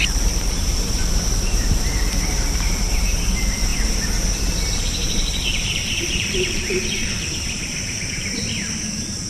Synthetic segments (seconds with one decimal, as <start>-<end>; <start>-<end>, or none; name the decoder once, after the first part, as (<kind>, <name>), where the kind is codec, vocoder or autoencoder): 0.0-3.7 (vocoder, BigVGAN v2); 4.8-9.3